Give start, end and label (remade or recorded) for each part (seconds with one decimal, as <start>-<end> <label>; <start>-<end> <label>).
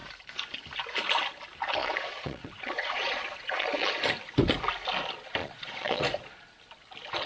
0.0-1.8 recorded; 1.8-3.9 remade; 3.9-5.4 recorded; 5.4-6.0 remade; 6.0-7.3 recorded